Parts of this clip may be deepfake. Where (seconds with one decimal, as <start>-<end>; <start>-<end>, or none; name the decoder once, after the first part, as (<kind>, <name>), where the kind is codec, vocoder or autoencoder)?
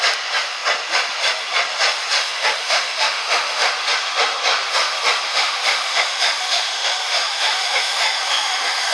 2.2-3.7 (autoencoder, DAC-VAE); 5.3-8.9